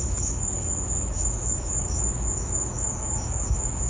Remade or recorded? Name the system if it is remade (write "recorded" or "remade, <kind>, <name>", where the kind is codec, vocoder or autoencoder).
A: remade, autoencoder, DAC-VAE